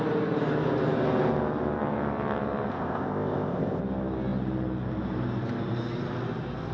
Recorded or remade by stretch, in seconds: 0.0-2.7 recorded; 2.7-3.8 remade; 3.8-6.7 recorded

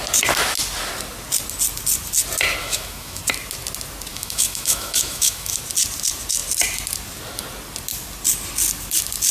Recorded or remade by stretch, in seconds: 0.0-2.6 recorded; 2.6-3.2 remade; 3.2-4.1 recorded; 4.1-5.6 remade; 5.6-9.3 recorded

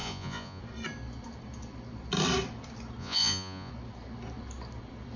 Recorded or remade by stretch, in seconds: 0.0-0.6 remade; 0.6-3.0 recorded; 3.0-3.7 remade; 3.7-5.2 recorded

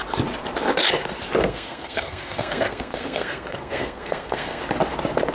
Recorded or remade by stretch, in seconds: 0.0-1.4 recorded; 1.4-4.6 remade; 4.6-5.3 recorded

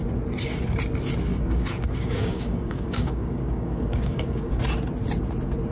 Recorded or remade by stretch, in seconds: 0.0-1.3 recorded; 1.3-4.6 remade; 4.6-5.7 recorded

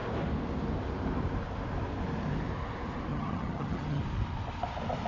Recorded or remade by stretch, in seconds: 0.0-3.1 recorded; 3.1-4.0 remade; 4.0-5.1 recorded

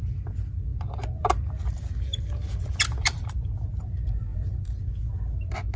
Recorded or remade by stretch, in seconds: 0.0-5.8 recorded